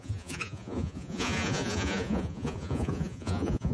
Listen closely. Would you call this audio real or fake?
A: fake